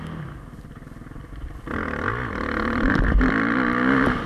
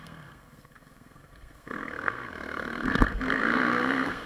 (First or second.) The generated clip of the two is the second